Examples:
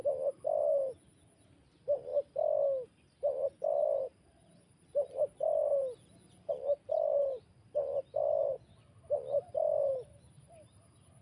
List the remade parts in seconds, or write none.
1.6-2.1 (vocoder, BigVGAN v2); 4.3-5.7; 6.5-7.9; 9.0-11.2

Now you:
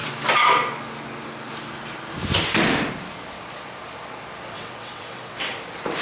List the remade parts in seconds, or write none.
4.5-5.6 (vocoder, WaveNeXt)

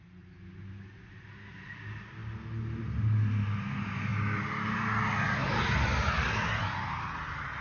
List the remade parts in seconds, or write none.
none

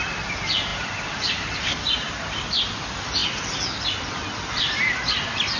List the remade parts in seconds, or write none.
none

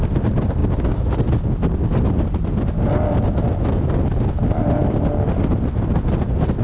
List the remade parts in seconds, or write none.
none

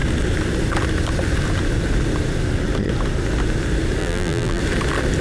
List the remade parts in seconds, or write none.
4.0-4.6 (vocoder, BigVGAN v2)